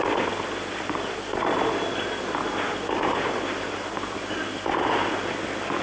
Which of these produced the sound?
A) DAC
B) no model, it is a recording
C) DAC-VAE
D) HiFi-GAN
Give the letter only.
B